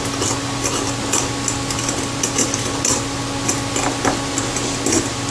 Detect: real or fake real